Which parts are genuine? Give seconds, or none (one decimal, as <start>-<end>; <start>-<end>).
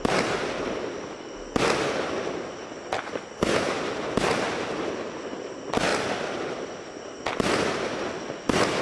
0.0-8.8